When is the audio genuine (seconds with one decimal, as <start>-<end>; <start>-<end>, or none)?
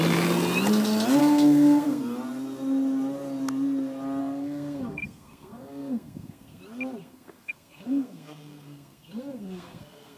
0.0-1.2; 2.0-4.2; 6.6-7.0